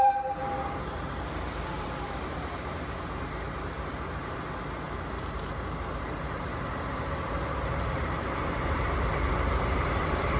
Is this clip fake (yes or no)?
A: yes